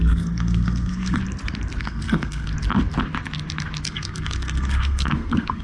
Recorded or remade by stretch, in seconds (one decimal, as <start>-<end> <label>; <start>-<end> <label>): 0.0-1.2 remade; 1.2-1.8 recorded; 1.8-2.5 remade; 2.5-3.8 recorded; 3.8-5.6 remade